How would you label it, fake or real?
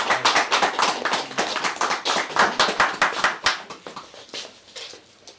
real